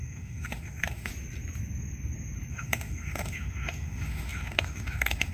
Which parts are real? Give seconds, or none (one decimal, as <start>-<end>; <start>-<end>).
1.1-2.5